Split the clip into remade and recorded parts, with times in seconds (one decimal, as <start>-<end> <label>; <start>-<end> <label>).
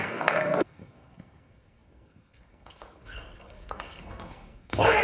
0.0-5.0 remade